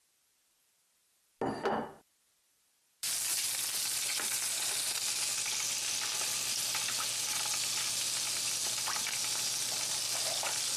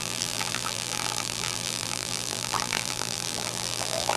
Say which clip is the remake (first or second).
second